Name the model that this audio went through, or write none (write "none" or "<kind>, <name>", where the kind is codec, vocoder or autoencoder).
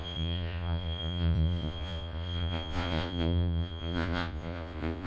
vocoder, Vocos